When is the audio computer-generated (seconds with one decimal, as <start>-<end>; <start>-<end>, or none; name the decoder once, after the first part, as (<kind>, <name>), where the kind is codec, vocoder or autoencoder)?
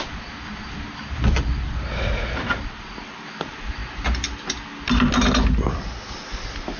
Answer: none